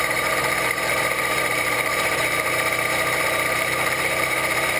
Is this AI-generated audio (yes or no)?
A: yes